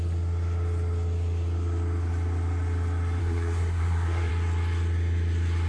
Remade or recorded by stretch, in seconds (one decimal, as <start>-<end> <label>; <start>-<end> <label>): 0.0-3.2 recorded; 3.2-4.3 remade; 4.3-5.7 recorded